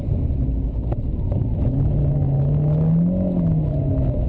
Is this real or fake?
real